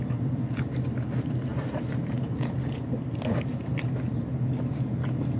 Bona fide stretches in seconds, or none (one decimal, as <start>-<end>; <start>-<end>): 0.0-5.4